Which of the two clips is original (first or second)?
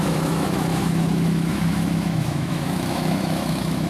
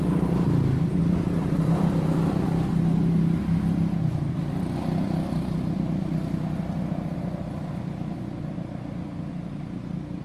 second